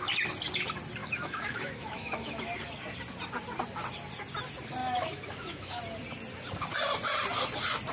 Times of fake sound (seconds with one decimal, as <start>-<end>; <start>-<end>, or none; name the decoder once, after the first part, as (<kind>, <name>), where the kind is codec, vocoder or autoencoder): 1.0-2.4 (autoencoder, DAC-VAE); 4.8-5.8